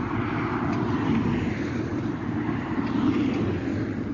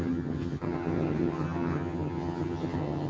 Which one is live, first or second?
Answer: first